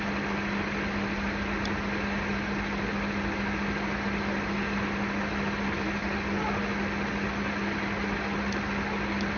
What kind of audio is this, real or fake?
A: real